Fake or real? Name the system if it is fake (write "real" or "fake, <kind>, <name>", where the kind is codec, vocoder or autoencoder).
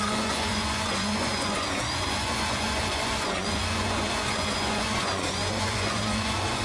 fake, vocoder, Vocos